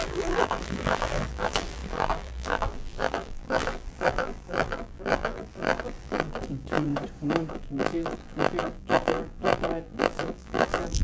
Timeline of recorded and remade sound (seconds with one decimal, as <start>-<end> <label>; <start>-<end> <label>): 0.0-6.9 remade; 6.9-7.5 recorded; 7.5-11.0 remade